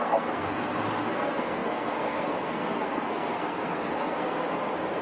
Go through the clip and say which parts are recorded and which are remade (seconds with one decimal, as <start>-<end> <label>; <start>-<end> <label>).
0.0-5.0 remade

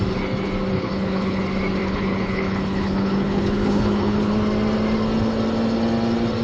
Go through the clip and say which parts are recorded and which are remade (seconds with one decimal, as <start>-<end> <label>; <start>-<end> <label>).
0.0-0.7 recorded; 0.7-1.4 remade; 1.4-1.8 recorded; 1.8-4.3 remade; 4.3-6.4 recorded